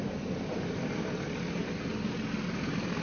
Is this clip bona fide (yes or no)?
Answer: yes